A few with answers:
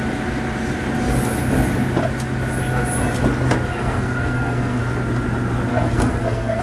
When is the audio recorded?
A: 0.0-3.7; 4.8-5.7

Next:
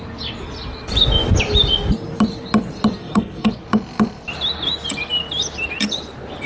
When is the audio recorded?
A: 0.0-3.0; 3.5-6.5

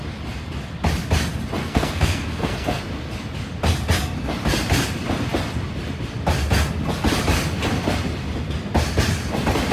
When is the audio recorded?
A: 0.0-1.6; 2.8-9.7

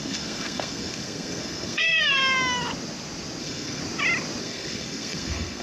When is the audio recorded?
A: 2.2-3.4; 3.8-4.4

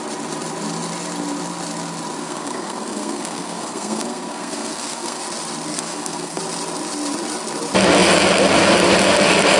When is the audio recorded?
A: 0.0-2.2; 5.2-5.7; 6.4-9.6